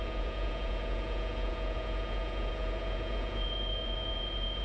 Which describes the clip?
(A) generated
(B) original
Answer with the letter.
A